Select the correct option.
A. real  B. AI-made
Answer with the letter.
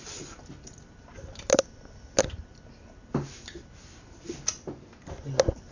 A